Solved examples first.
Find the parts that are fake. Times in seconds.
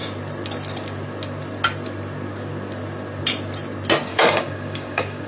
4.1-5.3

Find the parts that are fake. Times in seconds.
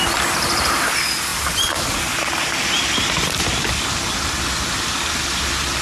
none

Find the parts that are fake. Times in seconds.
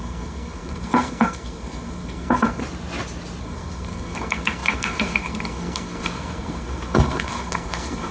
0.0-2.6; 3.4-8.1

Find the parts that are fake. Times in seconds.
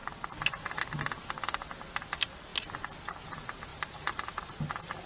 none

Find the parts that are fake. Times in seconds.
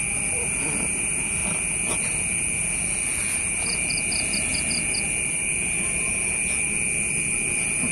none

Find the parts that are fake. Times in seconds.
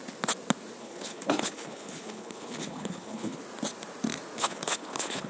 0.8-3.4; 4.4-5.3